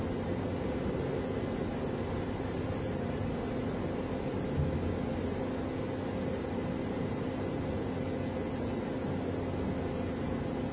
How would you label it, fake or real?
real